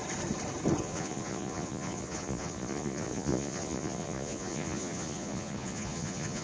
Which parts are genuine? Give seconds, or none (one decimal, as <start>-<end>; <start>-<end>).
0.0-0.8